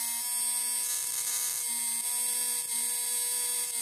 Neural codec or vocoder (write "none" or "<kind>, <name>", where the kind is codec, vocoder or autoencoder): none